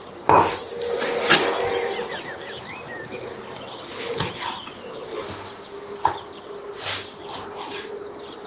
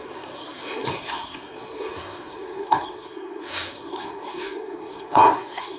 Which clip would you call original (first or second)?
first